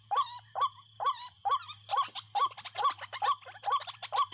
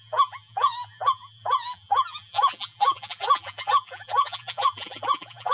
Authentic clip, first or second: first